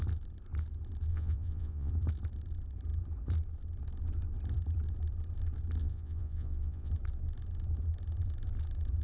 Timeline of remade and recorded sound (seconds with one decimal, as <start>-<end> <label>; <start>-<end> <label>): 0.0-1.1 recorded; 1.1-1.9 remade; 1.9-5.8 recorded; 5.8-6.9 remade; 6.9-9.0 recorded